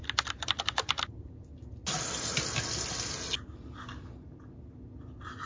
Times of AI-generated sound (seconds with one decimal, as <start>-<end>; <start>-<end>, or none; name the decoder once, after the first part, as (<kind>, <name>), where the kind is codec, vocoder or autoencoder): none